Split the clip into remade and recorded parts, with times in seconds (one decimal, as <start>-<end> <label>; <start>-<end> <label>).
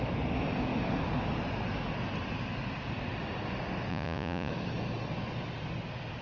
0.0-3.9 recorded; 3.9-4.5 remade; 4.5-6.2 recorded